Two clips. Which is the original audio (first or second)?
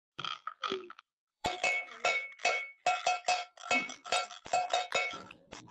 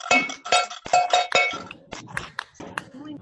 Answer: second